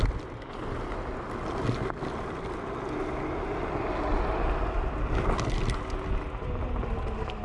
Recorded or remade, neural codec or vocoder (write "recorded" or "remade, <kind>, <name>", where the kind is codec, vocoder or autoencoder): recorded